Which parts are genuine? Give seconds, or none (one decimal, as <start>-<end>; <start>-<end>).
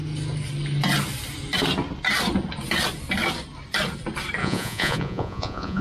0.0-4.4